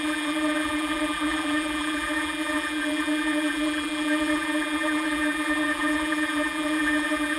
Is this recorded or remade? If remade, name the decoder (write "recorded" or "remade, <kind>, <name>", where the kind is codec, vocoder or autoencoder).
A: remade, vocoder, BigVGAN v2